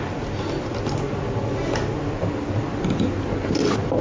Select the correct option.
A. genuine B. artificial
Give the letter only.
A